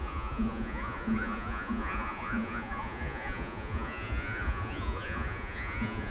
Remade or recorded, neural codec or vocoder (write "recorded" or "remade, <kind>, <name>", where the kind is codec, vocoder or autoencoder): remade, vocoder, Vocos